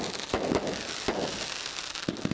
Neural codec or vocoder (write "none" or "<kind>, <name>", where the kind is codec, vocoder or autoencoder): none